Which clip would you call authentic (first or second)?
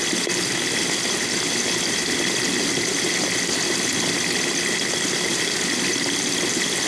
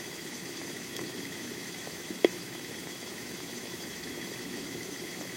first